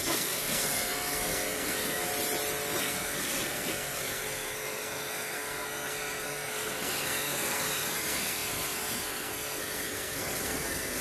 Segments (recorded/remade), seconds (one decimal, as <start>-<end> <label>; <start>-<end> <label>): 0.0-2.1 remade; 2.1-2.8 recorded; 2.8-11.0 remade

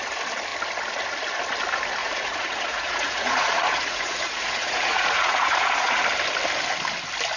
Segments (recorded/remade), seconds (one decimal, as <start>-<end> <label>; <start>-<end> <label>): 0.0-2.0 recorded; 2.0-6.0 remade; 6.0-7.4 recorded

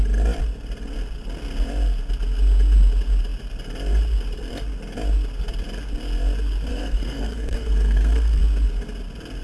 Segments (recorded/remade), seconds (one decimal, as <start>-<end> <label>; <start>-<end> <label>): 0.0-6.7 recorded; 6.7-8.4 remade; 8.4-9.4 recorded

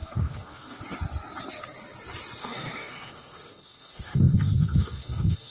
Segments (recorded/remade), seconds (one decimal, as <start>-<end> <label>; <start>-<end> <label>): 0.0-0.8 remade; 0.8-2.4 recorded; 2.4-5.5 remade

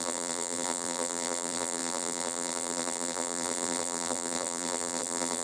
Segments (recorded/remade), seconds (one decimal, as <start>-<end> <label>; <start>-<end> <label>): 0.0-5.4 remade

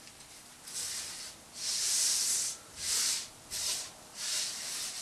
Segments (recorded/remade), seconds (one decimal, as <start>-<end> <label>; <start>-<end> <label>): 0.0-1.7 recorded; 1.7-5.0 remade

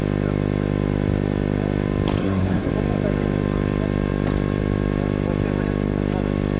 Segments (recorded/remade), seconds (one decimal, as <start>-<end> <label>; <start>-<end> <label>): 0.0-2.2 recorded; 2.2-2.7 remade; 2.7-6.6 recorded

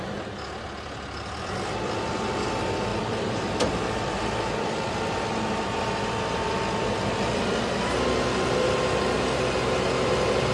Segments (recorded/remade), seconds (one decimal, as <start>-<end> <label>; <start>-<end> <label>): 0.0-2.9 recorded; 2.9-3.7 remade; 3.7-10.5 recorded